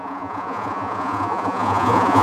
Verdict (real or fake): fake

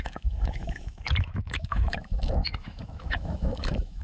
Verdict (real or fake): fake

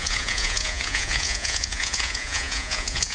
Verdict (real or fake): fake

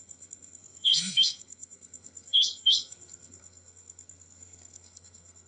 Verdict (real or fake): fake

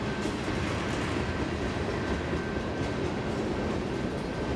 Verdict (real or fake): real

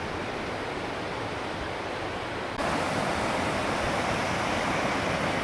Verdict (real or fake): real